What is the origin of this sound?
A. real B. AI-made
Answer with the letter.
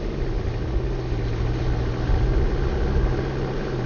A